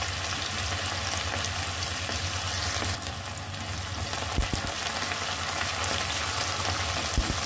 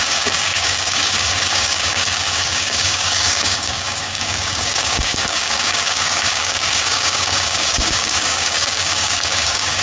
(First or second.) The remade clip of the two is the second